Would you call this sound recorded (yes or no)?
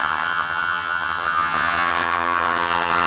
no